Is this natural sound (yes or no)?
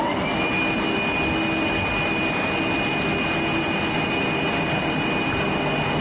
yes